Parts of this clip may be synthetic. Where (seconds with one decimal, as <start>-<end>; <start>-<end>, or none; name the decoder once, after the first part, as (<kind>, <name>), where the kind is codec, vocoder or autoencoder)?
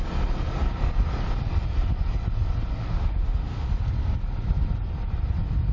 2.8-3.7 (autoencoder, DAC-VAE)